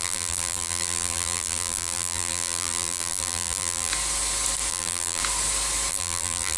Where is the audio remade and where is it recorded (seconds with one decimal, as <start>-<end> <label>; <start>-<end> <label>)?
0.0-3.9 remade; 3.9-4.7 recorded; 4.7-5.2 remade; 5.2-5.9 recorded; 5.9-6.6 remade